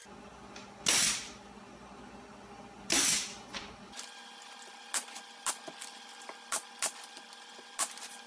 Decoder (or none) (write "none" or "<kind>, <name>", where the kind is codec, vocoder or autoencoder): none